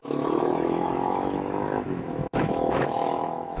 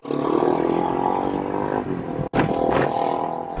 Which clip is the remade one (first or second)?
first